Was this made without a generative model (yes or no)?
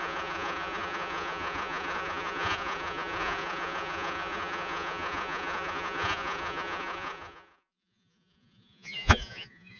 no